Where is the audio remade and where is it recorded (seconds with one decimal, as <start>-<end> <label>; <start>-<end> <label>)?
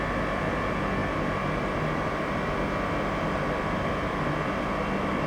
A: 0.0-5.3 recorded